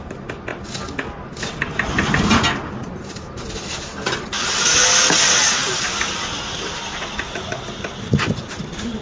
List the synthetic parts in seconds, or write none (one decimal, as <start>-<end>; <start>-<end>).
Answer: none

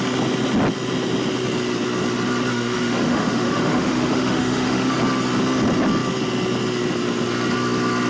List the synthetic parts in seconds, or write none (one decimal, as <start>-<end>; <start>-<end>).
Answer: 2.5-4.9

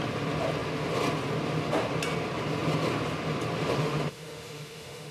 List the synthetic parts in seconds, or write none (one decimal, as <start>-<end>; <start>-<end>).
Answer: 3.8-5.1

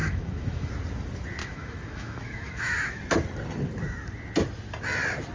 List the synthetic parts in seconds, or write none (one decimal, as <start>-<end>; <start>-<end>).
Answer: 0.0-0.7; 1.4-3.0

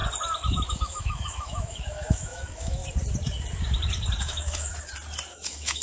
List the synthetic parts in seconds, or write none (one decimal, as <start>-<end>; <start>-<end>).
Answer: 0.7-2.8; 4.2-4.7; 5.3-5.8

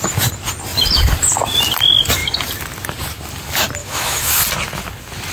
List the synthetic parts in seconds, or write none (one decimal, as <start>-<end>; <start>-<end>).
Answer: 3.8-4.4

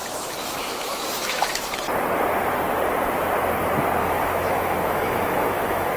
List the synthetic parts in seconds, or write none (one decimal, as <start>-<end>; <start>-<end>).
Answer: 0.0-1.8; 4.0-6.0